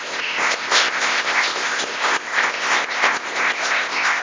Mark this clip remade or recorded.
remade